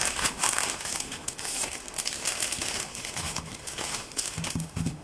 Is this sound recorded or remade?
remade